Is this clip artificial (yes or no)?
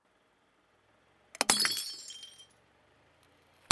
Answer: no